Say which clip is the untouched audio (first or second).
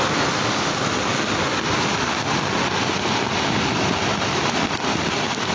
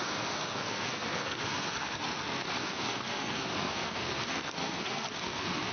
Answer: first